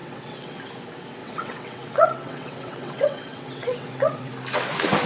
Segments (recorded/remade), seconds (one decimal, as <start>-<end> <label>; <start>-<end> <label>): 0.0-0.6 remade; 0.6-1.2 recorded; 1.2-4.3 remade; 4.3-5.1 recorded